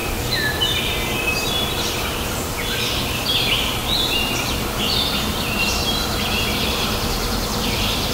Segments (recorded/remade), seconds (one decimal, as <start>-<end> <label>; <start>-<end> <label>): 0.0-1.5 recorded; 1.5-8.1 remade